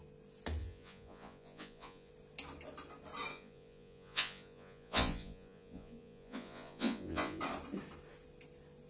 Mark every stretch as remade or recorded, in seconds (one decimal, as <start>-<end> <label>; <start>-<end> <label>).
0.0-0.6 recorded; 0.6-2.1 remade; 2.1-3.3 recorded; 3.3-7.4 remade; 7.4-8.9 recorded

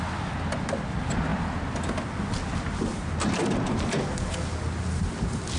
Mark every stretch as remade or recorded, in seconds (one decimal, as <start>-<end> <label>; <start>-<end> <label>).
0.0-5.6 recorded

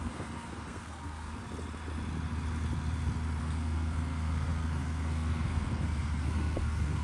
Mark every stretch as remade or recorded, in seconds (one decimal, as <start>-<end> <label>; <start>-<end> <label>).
0.0-1.4 remade; 1.4-3.4 recorded; 3.4-7.0 remade

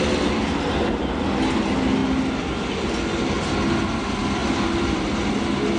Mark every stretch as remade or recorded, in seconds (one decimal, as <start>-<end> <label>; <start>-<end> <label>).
0.0-4.4 recorded; 4.4-5.3 remade; 5.3-5.8 recorded

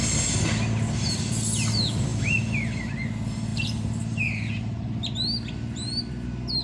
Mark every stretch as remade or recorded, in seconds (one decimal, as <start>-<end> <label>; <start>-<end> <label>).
0.0-3.5 recorded; 3.5-6.1 remade; 6.1-6.6 recorded